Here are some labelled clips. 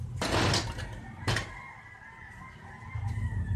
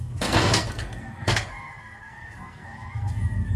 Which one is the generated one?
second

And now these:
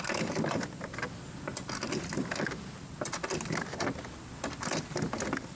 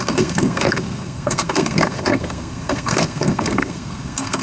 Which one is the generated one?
second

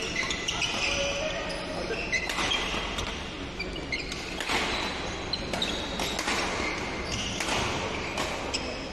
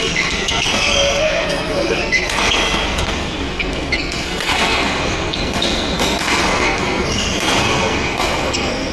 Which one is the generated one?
second